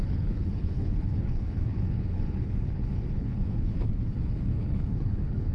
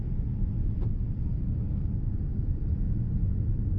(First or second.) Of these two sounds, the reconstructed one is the first